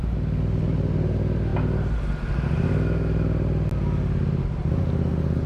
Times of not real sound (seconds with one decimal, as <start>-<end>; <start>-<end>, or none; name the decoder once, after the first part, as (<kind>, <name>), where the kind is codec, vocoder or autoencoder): none